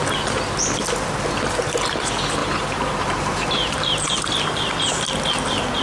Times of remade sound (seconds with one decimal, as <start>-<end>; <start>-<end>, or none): 2.4-4.1